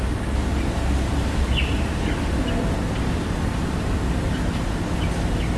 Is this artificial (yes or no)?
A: no